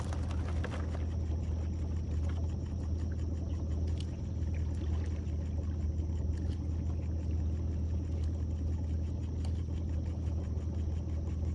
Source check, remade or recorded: recorded